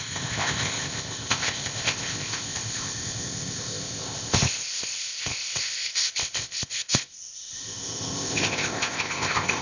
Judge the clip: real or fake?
fake